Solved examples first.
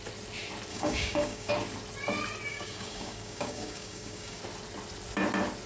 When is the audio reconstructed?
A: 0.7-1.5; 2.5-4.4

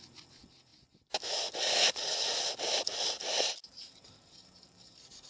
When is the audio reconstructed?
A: none

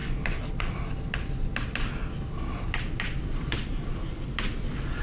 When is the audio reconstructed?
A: none

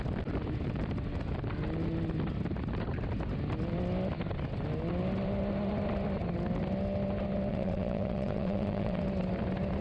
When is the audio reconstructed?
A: 7.5-9.0

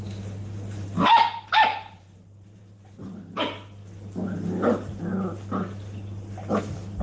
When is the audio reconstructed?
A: 0.4-1.2; 1.7-3.4

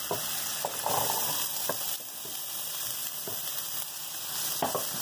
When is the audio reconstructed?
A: none